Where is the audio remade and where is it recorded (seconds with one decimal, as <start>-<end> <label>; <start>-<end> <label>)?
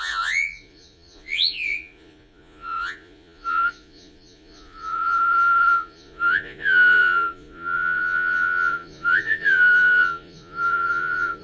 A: 0.0-11.4 remade